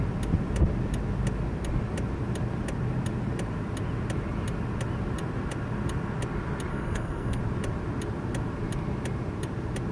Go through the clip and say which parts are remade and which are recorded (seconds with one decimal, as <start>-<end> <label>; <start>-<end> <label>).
0.0-6.7 recorded; 6.7-7.4 remade; 7.4-9.9 recorded